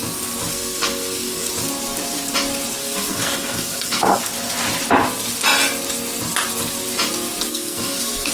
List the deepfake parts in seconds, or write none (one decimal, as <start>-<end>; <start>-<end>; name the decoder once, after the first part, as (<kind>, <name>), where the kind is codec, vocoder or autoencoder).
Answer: 0.5-1.5 (codec, SNAC); 2.8-4.2; 7.5-8.3